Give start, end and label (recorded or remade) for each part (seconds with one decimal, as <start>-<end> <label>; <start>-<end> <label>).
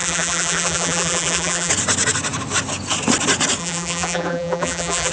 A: 0.0-1.7 remade; 1.7-3.6 recorded; 3.6-5.1 remade